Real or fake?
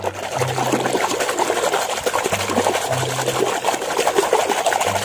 real